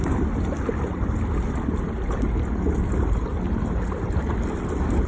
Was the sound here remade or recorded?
recorded